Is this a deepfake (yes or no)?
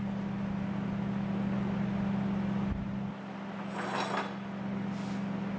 no